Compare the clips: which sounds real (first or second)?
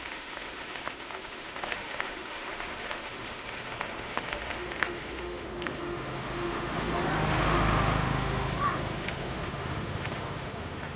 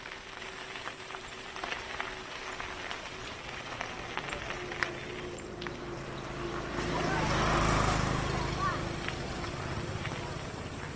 second